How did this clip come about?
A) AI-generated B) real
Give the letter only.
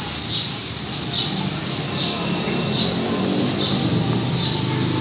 B